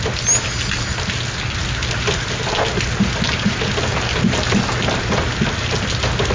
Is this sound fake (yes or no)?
no